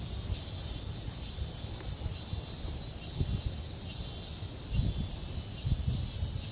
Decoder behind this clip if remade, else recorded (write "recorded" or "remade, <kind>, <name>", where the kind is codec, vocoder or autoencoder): recorded